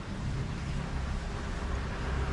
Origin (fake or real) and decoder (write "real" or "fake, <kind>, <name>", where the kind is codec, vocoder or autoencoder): real